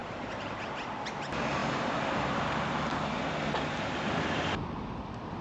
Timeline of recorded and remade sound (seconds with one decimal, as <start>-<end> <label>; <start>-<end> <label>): 0.0-1.0 remade; 1.0-5.4 recorded